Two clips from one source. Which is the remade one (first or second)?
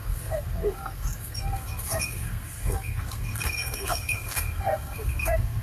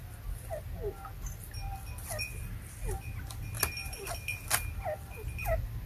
first